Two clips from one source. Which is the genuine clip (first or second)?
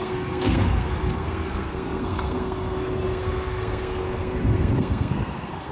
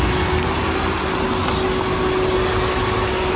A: second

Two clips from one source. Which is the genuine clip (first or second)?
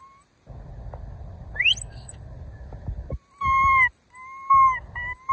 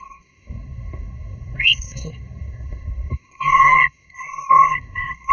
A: first